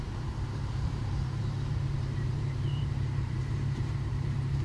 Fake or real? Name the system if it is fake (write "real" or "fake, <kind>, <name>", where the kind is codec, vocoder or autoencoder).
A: fake, vocoder, BigVGAN v2